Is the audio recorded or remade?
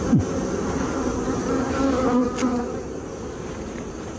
recorded